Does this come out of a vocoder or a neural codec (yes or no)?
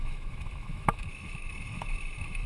yes